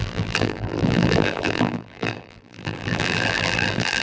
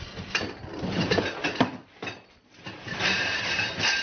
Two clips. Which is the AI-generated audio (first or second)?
first